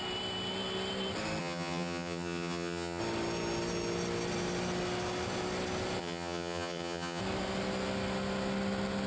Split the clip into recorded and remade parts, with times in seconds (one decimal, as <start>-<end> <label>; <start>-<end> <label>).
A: 0.0-1.4 recorded; 1.4-3.0 remade; 3.0-6.0 recorded; 6.0-7.2 remade; 7.2-9.1 recorded